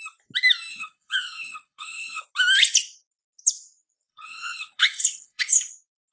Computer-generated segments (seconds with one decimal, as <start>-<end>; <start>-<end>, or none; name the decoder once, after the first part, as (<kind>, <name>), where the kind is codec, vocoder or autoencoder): 0.7-2.2 (codec, HILCodec); 4.1-5.5